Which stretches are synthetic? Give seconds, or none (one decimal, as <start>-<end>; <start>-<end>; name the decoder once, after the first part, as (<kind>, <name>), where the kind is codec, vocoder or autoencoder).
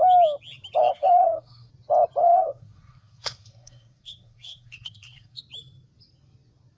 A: 0.8-1.7 (codec, SNAC); 2.2-5.4